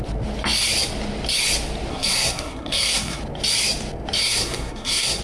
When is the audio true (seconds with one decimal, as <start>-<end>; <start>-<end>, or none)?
0.0-1.9; 3.2-4.2